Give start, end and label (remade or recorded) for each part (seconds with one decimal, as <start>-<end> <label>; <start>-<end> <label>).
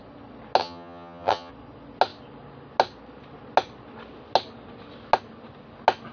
0.0-0.6 recorded; 0.6-1.5 remade; 1.5-6.1 recorded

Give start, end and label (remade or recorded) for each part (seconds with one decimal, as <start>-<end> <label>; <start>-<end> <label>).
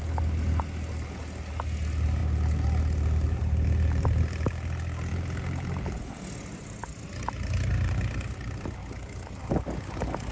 0.0-10.3 recorded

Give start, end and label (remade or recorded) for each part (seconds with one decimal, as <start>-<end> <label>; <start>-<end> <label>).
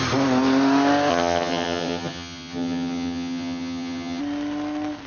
0.0-1.1 recorded; 1.1-4.2 remade; 4.2-5.1 recorded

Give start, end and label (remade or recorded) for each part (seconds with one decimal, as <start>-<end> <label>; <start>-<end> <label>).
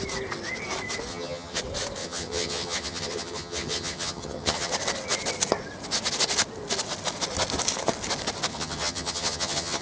0.0-1.1 recorded; 1.1-1.6 remade; 1.6-2.0 recorded; 2.0-4.7 remade; 4.7-8.5 recorded; 8.5-9.8 remade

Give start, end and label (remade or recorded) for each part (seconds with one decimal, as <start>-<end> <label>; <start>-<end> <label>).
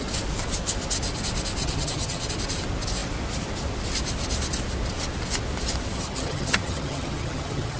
0.0-1.6 recorded; 1.6-2.3 remade; 2.3-5.9 recorded; 5.9-7.8 remade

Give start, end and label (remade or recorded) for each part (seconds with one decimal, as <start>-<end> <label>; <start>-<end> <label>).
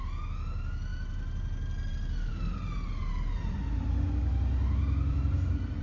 0.0-5.8 recorded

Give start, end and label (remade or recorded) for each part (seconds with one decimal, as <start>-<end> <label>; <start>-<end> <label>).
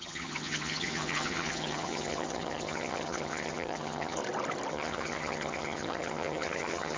0.0-4.2 remade; 4.2-4.7 recorded; 4.7-7.0 remade